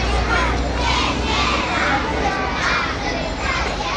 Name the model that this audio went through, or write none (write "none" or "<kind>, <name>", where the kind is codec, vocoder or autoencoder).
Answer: none